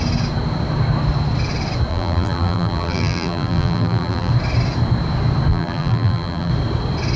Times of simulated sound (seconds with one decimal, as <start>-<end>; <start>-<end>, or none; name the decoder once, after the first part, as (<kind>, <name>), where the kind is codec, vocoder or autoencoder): 1.9-4.3 (vocoder, BigVGAN v2); 5.5-6.5